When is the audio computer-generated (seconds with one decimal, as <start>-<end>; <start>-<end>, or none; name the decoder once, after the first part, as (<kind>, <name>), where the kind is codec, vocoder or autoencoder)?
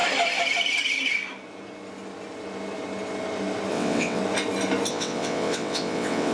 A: 3.7-4.2 (vocoder, WaveNeXt); 4.9-6.3